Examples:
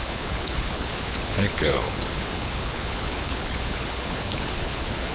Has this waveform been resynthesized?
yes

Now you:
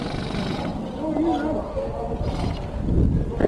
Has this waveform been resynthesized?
no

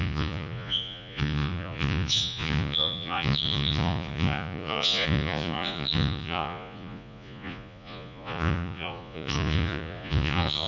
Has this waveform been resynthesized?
yes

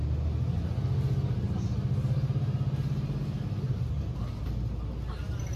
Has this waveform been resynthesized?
no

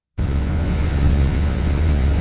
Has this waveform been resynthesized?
yes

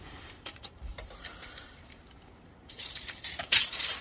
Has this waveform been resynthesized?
yes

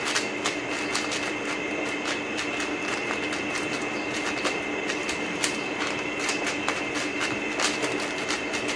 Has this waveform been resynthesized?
no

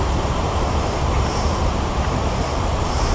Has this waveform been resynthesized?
yes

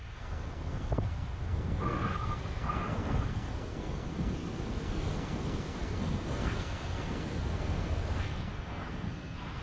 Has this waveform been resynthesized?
yes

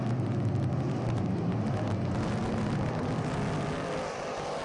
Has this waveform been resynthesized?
no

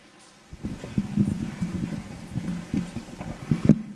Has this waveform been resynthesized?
no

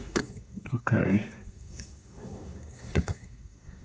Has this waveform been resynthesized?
yes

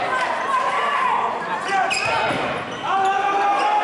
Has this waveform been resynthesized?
no